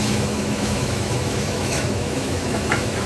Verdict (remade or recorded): remade